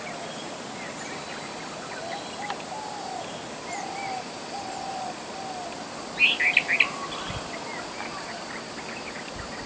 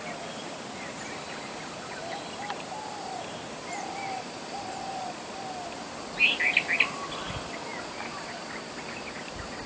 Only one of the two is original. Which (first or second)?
first